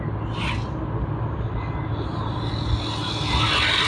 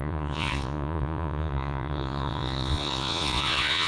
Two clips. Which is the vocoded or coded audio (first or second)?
second